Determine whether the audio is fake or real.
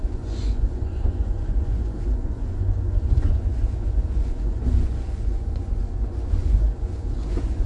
fake